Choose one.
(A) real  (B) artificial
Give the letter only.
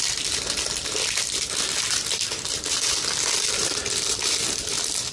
B